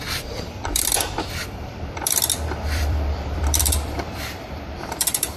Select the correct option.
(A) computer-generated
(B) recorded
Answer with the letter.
A